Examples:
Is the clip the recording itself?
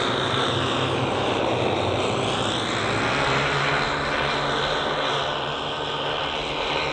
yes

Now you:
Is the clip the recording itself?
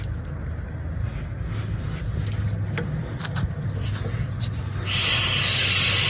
yes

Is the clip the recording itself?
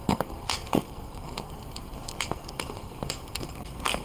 no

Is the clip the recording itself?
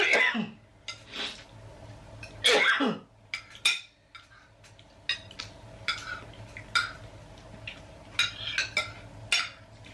yes